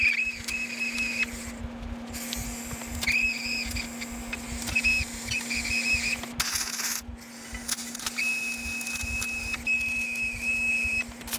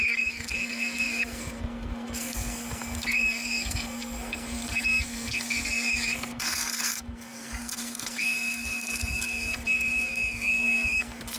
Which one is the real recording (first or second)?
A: first